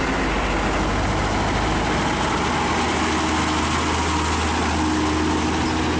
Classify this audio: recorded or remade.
recorded